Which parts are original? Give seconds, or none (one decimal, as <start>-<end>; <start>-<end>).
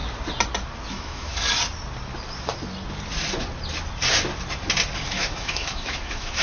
0.0-0.9; 1.3-5.1